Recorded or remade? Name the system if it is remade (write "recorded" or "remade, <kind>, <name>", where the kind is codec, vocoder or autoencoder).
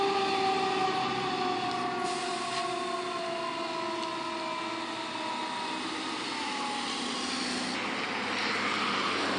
recorded